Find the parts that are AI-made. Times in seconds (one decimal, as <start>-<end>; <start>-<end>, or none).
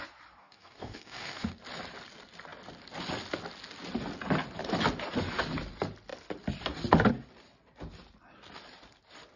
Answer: 0.4-1.6